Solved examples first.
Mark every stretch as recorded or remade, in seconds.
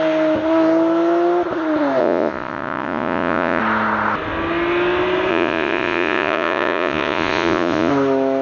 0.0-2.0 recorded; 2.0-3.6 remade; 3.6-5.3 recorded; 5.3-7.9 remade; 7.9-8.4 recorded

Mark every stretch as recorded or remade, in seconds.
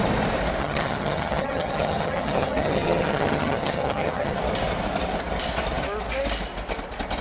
0.0-0.6 recorded; 0.6-4.4 remade; 4.4-7.2 recorded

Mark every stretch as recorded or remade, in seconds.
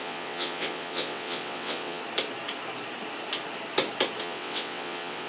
0.0-2.0 remade; 2.0-4.2 recorded; 4.2-5.3 remade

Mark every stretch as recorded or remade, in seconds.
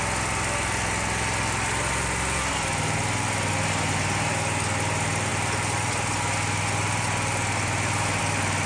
0.0-8.7 recorded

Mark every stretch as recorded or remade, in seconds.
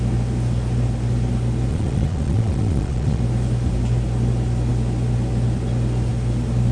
0.0-1.7 recorded; 1.7-3.2 remade; 3.2-6.7 recorded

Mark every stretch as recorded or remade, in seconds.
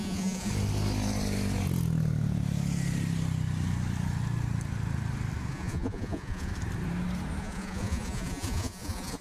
0.0-0.5 remade; 0.5-5.5 recorded; 5.5-6.5 remade; 6.5-7.4 recorded; 7.4-9.2 remade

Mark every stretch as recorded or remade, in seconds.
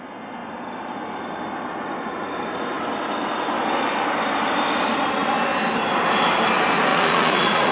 0.0-6.9 recorded; 6.9-7.7 remade